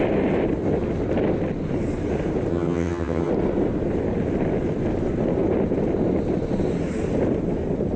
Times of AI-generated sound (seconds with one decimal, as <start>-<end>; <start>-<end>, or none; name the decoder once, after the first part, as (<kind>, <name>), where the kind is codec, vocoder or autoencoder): 2.5-3.3 (vocoder, HiFi-GAN)